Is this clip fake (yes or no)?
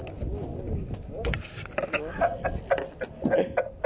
no